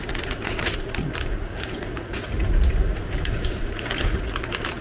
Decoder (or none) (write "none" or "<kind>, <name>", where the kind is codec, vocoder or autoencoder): vocoder, Vocos